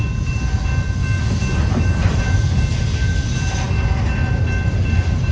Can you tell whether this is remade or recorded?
recorded